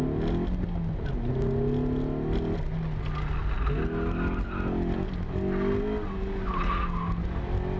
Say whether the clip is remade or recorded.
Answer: recorded